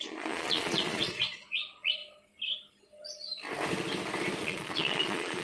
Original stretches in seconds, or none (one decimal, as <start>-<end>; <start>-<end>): 2.0-4.4